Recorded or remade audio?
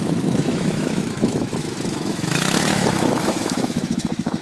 remade